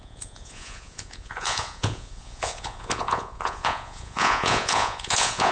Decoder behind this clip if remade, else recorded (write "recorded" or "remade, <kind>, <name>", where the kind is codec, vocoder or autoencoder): remade, vocoder, Vocos